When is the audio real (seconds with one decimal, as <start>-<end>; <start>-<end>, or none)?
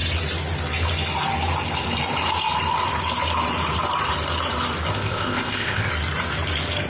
0.0-4.9; 5.9-6.9